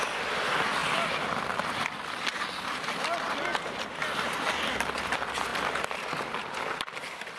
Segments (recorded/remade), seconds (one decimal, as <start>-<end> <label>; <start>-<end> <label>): 0.0-7.4 recorded